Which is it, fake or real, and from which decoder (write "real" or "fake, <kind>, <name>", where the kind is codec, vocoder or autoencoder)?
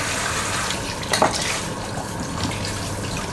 fake, vocoder, BigVGAN v2